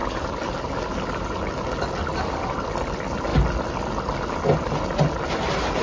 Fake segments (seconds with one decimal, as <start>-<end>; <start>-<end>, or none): none